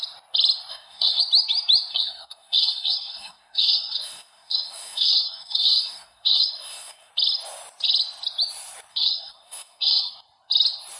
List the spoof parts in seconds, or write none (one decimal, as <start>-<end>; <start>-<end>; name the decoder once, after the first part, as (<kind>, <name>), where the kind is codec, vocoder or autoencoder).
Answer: 0.7-1.2 (codec, SNAC); 1.9-7.1; 8.9-10.1

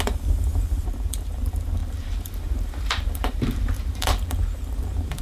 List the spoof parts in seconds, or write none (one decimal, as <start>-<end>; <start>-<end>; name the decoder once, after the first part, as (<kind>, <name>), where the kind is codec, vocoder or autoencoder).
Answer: 0.0-5.2 (vocoder, BigVGAN v2)

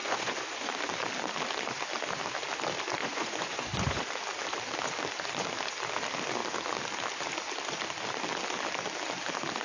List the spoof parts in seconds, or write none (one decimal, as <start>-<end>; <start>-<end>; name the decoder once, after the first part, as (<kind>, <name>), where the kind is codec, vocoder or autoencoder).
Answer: 0.0-0.7 (vocoder, Vocos); 3.0-4.0